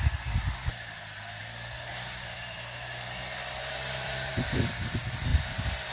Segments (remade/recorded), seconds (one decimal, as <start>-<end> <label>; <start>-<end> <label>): 0.0-1.9 recorded; 1.9-4.3 remade; 4.3-5.3 recorded; 5.3-5.9 remade